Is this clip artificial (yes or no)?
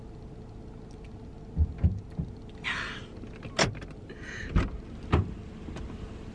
no